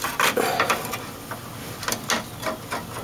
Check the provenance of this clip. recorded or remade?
recorded